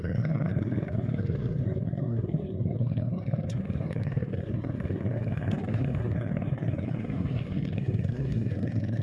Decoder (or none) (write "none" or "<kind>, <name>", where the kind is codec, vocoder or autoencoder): codec, SNAC